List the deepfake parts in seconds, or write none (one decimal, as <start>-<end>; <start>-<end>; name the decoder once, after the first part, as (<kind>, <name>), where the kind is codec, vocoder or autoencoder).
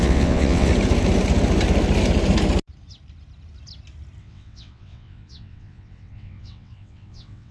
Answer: 0.0-0.7 (vocoder, WaveNeXt); 4.2-7.5